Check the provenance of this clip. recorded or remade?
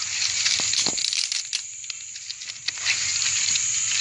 recorded